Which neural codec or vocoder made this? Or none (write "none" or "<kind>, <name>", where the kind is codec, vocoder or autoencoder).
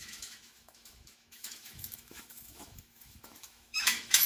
autoencoder, DAC-VAE